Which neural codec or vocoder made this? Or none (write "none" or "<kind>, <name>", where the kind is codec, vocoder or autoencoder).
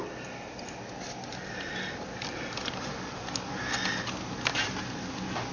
none